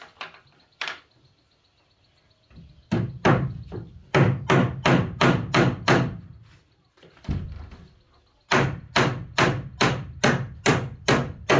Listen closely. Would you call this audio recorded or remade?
recorded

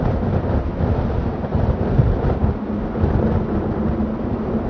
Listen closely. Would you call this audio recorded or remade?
recorded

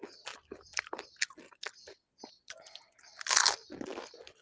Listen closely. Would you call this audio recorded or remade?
recorded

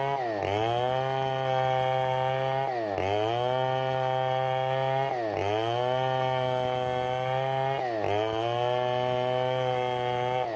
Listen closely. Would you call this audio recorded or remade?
recorded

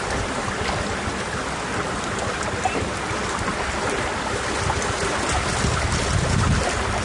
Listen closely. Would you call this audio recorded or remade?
recorded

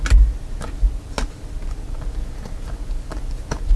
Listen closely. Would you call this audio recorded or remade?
recorded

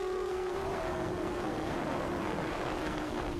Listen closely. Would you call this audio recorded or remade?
remade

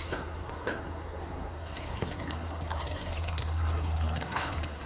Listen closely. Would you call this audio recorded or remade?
remade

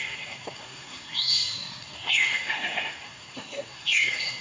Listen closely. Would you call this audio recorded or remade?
remade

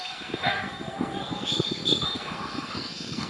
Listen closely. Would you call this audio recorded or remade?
remade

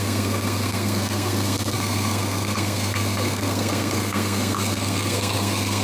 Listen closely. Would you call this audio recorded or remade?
remade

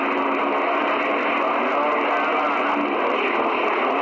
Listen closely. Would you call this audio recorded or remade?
recorded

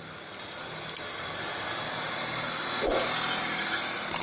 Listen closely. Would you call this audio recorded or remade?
recorded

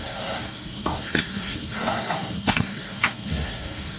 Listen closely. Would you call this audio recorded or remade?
remade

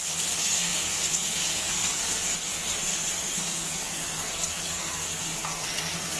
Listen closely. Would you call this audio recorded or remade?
remade